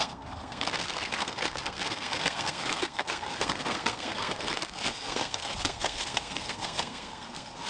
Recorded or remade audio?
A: remade